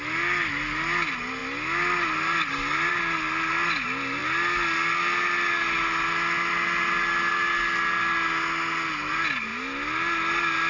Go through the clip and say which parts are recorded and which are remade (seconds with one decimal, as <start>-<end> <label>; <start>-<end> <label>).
0.0-10.7 recorded